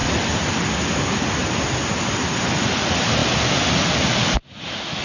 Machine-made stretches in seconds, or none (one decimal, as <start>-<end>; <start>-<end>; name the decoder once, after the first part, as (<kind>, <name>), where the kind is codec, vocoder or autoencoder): none